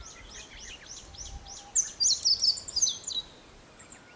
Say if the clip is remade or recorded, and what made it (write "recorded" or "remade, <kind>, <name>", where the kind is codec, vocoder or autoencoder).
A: recorded